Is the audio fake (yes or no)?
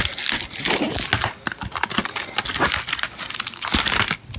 no